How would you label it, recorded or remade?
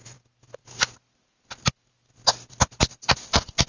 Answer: recorded